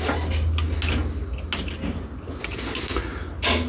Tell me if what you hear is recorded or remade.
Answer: recorded